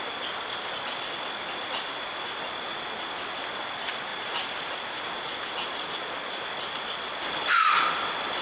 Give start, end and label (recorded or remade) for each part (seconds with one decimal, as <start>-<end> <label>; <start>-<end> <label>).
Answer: 0.0-4.1 recorded; 4.1-5.0 remade; 5.0-8.4 recorded